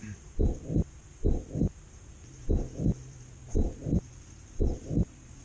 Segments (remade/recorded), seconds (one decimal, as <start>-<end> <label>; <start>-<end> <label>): 0.0-5.4 remade